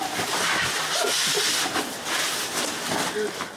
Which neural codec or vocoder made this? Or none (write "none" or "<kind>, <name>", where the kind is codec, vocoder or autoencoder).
none